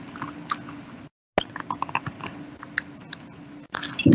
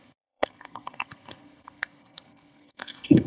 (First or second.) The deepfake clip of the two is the second